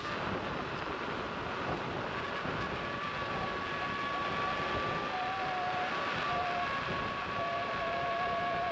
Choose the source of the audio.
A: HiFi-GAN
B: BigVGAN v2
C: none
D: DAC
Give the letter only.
C